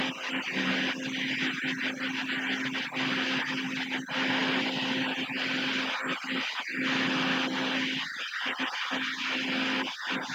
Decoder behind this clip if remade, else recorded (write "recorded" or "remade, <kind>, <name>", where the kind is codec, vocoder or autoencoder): recorded